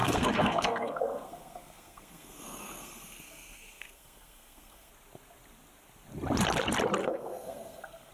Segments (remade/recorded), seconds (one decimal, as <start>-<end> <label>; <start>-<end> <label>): 0.0-4.9 remade; 4.9-7.0 recorded; 7.0-8.1 remade